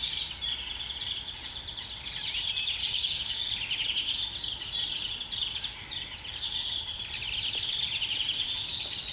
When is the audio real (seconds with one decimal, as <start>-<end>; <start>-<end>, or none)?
0.0-2.8; 3.5-9.1